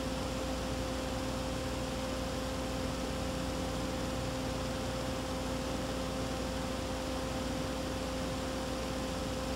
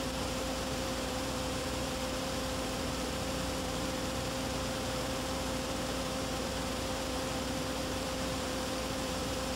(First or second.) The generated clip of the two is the second